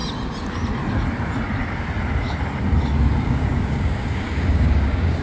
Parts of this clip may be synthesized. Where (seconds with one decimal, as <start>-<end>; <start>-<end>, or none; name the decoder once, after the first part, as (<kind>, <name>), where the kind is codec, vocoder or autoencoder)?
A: 3.1-5.2 (codec, DAC)

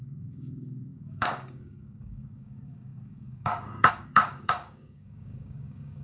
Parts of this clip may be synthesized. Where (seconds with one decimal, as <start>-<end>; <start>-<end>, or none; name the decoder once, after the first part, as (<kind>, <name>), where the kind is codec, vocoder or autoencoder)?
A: 0.0-6.0 (codec, DAC)